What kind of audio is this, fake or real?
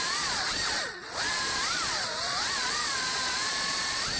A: fake